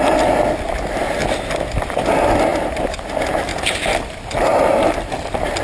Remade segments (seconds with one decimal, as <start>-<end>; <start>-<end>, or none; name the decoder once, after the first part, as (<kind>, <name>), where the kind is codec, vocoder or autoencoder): none

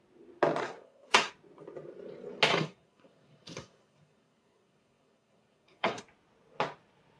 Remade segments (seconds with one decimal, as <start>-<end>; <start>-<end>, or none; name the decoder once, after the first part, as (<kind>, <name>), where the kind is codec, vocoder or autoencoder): 0.6-1.3 (codec, SNAC); 2.5-6.0

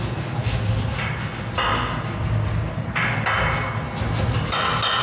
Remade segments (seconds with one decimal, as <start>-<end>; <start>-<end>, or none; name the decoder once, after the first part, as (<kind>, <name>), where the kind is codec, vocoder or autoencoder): none

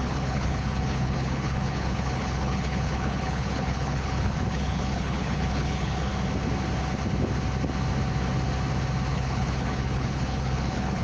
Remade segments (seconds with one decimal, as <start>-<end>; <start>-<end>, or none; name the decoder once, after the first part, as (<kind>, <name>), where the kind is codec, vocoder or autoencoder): 0.0-6.1 (codec, HILCodec); 9.1-11.0

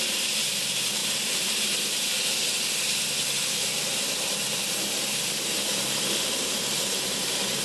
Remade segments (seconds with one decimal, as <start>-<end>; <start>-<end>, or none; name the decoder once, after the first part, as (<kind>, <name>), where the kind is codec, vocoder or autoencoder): 0.0-2.1 (vocoder, BigVGAN v2); 4.6-7.6

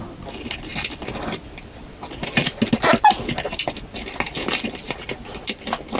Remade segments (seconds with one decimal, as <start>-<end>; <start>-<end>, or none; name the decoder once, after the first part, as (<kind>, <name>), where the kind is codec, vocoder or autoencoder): none

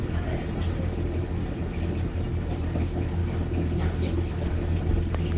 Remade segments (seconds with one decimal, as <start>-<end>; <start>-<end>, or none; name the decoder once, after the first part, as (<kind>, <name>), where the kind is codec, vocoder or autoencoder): none